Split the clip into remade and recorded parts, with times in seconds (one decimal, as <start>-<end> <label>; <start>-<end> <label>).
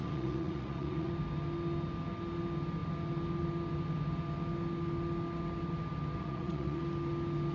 0.0-1.1 remade; 1.1-6.2 recorded; 6.2-6.8 remade; 6.8-7.5 recorded